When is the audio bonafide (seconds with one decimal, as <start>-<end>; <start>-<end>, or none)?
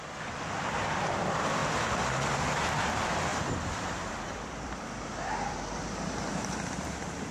1.6-2.7